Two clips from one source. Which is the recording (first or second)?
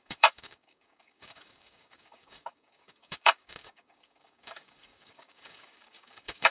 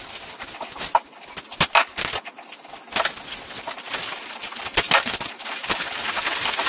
second